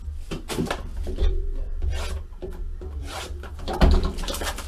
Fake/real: fake